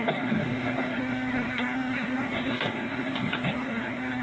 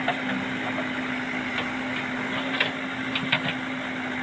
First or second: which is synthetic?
first